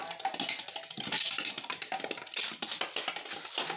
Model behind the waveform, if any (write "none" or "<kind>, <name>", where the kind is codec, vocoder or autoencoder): none